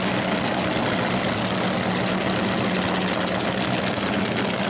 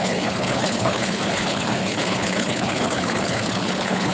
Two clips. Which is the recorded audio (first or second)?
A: first